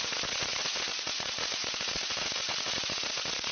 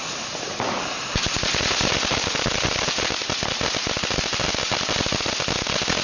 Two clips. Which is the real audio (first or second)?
second